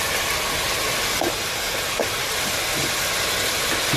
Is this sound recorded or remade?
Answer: recorded